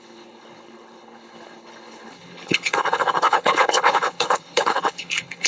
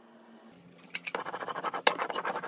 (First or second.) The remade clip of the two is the first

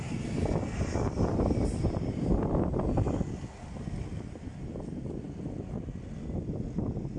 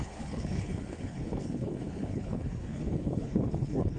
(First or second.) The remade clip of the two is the second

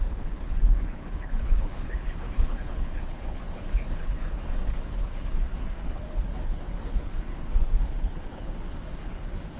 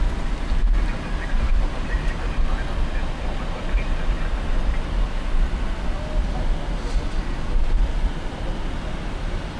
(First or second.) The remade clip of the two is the first